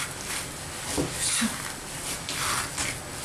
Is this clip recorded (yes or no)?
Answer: yes